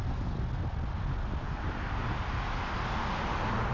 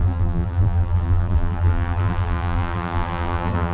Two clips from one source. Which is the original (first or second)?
first